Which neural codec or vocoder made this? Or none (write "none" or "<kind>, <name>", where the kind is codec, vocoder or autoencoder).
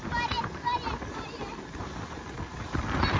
none